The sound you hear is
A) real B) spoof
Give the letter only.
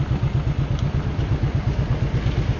A